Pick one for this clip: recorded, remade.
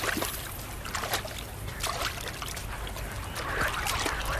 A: recorded